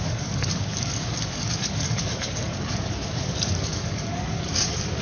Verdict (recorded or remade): remade